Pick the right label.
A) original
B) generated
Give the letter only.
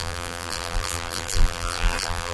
B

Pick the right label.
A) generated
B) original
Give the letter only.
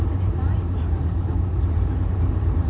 A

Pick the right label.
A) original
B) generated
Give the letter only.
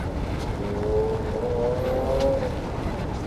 A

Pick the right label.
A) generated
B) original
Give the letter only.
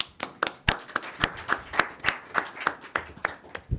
B